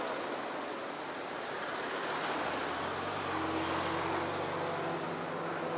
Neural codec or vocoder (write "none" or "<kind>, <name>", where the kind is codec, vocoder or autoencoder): none